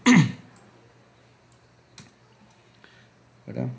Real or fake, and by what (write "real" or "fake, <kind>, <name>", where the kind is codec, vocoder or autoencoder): real